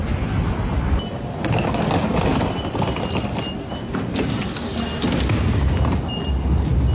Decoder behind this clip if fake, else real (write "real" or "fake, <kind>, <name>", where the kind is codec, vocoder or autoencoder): real